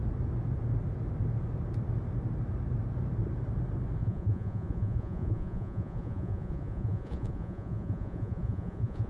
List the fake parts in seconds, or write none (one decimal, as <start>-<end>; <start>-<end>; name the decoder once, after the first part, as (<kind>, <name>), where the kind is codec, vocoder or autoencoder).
4.0-9.1 (vocoder, Vocos)